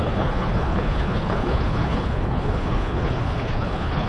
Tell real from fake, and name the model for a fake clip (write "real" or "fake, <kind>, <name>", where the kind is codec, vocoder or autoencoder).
fake, codec, HILCodec